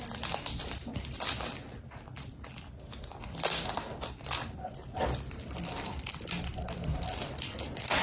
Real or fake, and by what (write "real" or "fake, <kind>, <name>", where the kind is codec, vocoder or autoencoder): real